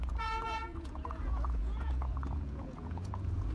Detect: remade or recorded remade